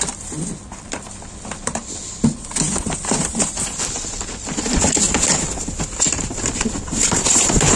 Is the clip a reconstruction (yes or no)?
yes